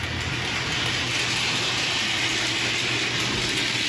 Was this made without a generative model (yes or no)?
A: yes